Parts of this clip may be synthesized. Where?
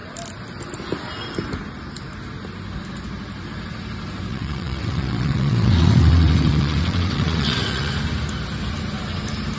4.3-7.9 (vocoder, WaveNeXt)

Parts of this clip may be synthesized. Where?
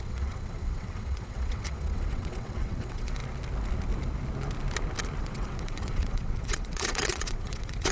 0.0-3.2 (vocoder, WaveNeXt); 5.2-7.9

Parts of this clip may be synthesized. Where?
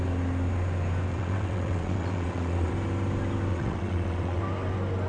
1.1-2.7 (vocoder, WaveNeXt); 3.5-4.4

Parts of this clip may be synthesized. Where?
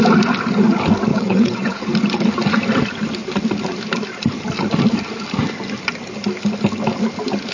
1.1-1.9 (vocoder, WaveNeXt)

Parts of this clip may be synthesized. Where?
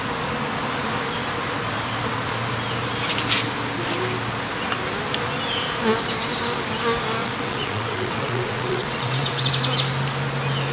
7.2-9.5 (vocoder, WaveNeXt)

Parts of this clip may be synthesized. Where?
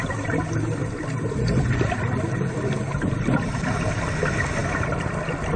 none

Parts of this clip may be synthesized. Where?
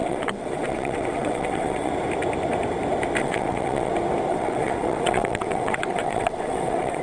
0.0-1.9 (vocoder, WaveNeXt); 3.2-3.9; 4.3-7.0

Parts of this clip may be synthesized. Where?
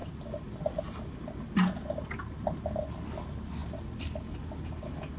none